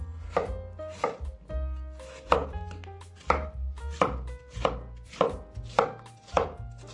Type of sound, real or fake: real